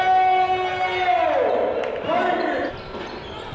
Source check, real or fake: real